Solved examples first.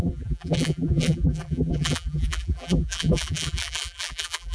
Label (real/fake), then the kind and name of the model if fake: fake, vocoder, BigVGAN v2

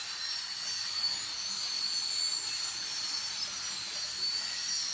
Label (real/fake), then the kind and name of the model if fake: real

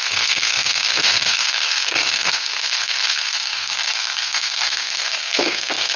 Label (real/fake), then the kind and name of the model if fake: fake, codec, SNAC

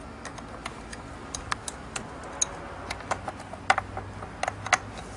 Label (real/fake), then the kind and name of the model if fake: real